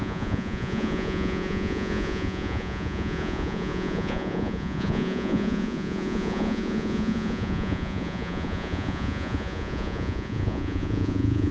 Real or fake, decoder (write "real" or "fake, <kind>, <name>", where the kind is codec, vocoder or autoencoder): fake, vocoder, Vocos